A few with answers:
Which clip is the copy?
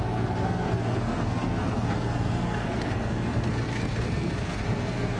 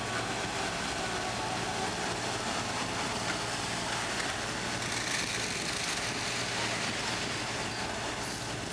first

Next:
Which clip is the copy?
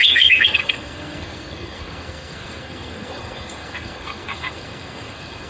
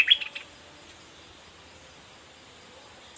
first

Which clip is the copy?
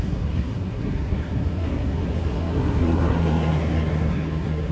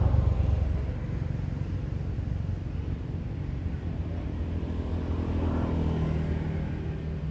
first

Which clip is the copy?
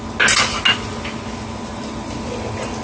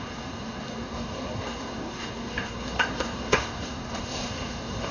second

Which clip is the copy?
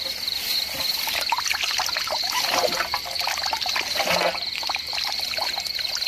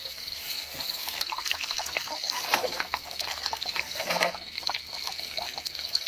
second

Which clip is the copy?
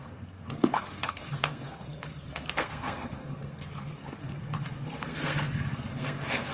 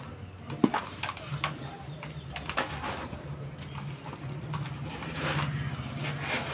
first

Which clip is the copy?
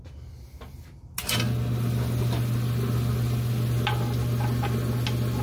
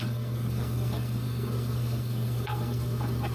second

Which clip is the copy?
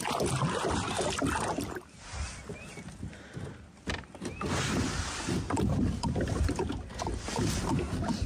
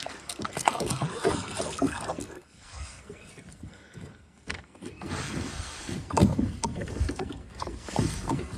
second